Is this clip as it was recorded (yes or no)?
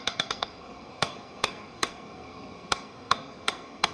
no